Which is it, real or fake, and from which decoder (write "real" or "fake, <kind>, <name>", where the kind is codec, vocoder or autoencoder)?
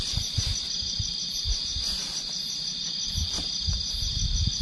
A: real